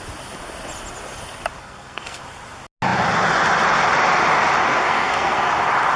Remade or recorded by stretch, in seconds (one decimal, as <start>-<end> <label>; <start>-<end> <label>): 0.0-1.6 recorded; 1.6-2.2 remade; 2.2-4.7 recorded; 4.7-5.5 remade; 5.5-6.0 recorded